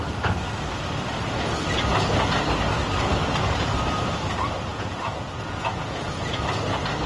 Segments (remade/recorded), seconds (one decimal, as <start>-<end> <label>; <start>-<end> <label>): 0.0-4.7 recorded; 4.7-6.4 remade; 6.4-7.1 recorded